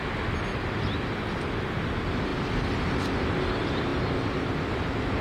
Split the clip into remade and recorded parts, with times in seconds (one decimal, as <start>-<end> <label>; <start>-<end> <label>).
0.0-5.2 recorded